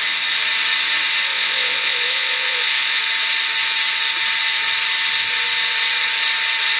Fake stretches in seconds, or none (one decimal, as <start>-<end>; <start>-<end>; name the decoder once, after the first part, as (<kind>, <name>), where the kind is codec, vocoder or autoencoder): 1.3-3.0 (vocoder, Vocos)